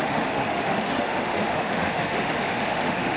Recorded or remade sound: remade